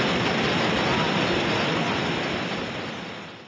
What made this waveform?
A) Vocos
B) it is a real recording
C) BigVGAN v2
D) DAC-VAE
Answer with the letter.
B